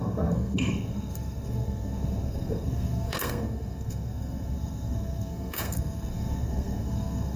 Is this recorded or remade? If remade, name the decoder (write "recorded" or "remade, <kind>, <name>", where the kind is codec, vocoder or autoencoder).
remade, codec, SNAC